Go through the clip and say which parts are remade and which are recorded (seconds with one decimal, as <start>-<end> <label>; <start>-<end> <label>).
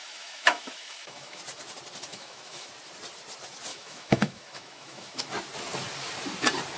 0.0-1.4 remade; 1.4-2.1 recorded; 2.1-2.7 remade; 2.7-3.7 recorded; 3.7-5.3 remade; 5.3-6.8 recorded